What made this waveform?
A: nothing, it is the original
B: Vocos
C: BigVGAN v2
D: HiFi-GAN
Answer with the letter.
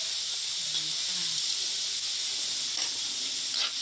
A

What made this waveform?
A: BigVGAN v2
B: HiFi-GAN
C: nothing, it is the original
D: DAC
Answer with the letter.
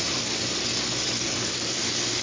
C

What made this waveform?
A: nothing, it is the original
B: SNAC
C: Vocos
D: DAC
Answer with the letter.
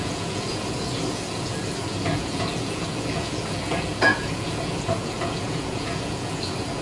C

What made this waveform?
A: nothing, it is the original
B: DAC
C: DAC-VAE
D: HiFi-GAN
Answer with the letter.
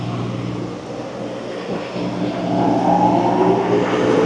A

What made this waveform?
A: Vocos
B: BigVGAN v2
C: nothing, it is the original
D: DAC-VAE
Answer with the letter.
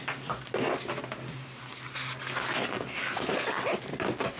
C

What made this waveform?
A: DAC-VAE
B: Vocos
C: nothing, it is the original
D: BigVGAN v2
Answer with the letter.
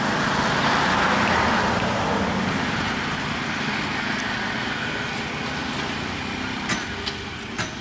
C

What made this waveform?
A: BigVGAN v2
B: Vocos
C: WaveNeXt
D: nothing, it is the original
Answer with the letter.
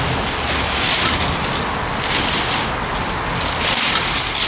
D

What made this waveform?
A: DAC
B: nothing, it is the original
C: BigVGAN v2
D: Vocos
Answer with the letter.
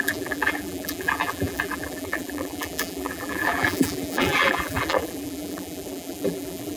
C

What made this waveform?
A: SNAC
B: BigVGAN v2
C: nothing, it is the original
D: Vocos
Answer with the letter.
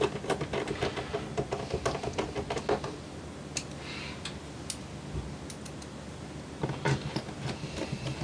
C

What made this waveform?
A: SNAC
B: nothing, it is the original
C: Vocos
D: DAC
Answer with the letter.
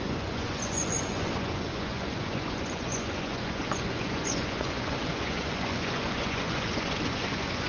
C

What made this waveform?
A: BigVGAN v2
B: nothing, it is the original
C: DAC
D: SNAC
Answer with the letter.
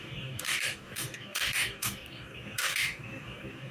C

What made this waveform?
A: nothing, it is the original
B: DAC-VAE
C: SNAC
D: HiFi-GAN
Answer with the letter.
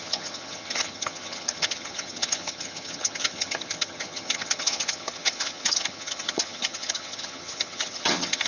D